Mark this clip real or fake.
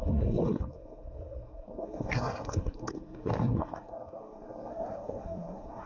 fake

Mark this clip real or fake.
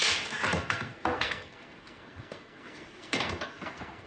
fake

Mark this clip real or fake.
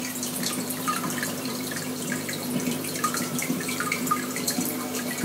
fake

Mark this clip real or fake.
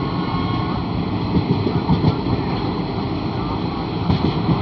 real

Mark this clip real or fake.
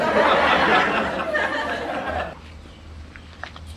real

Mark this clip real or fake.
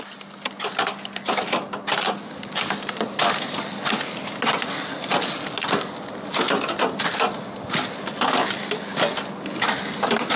real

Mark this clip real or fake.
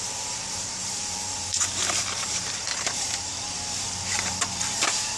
fake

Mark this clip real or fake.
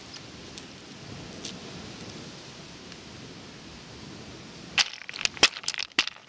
real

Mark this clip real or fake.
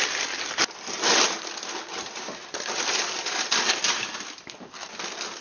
real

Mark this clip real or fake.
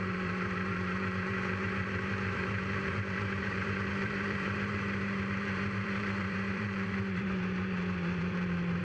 fake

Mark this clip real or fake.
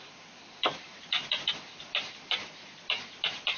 real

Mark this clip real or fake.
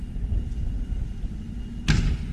real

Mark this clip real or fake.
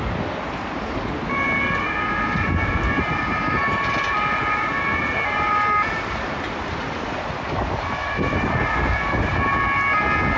real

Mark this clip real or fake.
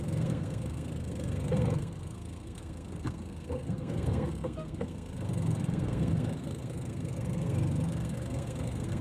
fake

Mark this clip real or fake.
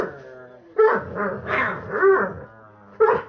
real